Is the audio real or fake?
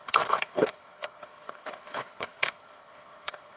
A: fake